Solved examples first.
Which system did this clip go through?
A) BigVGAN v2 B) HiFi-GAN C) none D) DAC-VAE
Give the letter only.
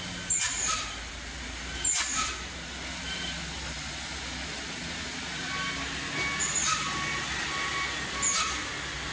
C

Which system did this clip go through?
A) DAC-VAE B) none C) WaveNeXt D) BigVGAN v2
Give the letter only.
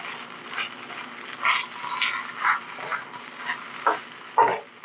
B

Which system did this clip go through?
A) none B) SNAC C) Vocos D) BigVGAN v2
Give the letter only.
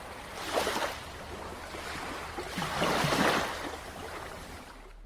A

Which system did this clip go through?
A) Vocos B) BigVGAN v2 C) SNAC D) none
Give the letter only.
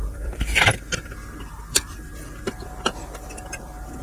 B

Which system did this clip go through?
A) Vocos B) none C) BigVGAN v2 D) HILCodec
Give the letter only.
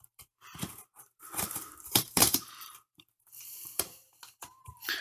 C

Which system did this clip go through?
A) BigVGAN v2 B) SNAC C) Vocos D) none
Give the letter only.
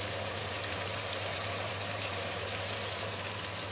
A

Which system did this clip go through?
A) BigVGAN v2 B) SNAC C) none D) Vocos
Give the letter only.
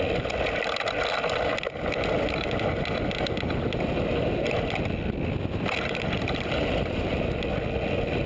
C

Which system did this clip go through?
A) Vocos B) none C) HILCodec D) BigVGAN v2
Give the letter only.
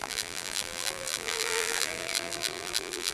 D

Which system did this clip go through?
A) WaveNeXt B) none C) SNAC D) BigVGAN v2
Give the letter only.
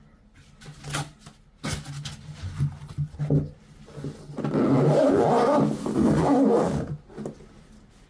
B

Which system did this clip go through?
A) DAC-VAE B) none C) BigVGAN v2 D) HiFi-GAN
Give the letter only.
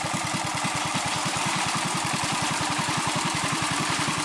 C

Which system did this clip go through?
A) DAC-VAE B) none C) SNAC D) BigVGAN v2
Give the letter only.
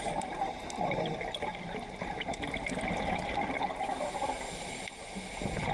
B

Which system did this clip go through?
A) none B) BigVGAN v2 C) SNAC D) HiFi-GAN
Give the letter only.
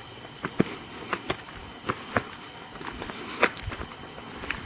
A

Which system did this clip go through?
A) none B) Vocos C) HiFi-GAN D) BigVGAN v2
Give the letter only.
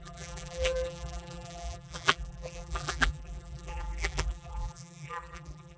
D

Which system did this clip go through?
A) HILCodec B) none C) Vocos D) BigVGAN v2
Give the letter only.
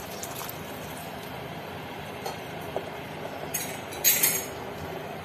D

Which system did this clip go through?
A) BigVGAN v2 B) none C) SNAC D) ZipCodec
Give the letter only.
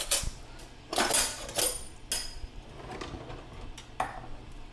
B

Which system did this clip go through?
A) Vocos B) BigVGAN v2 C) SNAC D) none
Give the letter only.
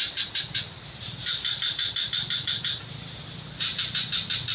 B